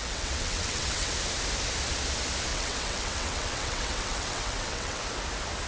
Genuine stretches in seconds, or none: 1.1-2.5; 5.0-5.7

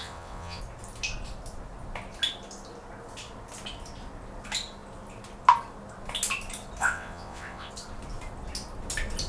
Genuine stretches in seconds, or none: 0.6-6.8; 7.7-9.3